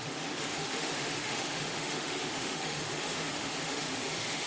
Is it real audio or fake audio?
fake